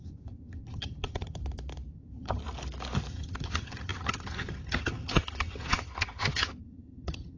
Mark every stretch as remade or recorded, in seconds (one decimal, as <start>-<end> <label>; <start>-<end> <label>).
0.0-1.4 remade; 1.4-1.9 recorded; 1.9-2.4 remade; 2.4-3.1 recorded; 3.1-7.4 remade